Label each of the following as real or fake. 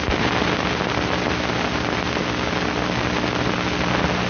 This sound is real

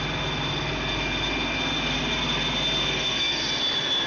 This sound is real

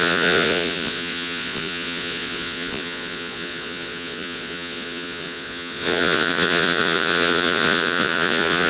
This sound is fake